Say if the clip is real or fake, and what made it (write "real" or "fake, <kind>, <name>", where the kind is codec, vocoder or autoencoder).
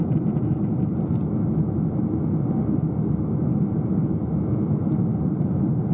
real